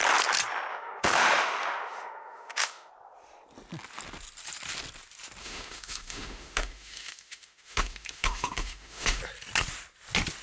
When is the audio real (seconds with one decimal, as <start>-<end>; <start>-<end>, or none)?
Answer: 0.0-0.7; 2.9-5.4; 9.2-10.4